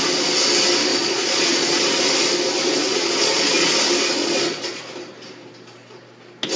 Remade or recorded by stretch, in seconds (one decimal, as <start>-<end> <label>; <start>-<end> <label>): 0.0-0.9 recorded; 0.9-2.0 remade; 2.0-2.9 recorded; 2.9-3.7 remade; 3.7-4.2 recorded; 4.2-4.8 remade; 4.8-6.6 recorded